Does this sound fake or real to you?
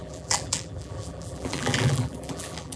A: fake